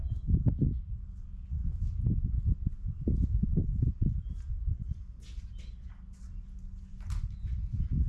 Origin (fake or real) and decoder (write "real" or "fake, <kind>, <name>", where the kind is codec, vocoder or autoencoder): real